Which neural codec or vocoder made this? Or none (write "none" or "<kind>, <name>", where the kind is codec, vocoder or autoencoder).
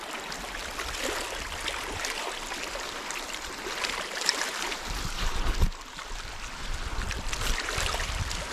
none